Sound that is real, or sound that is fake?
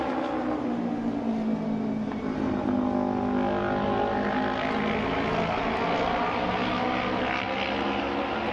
real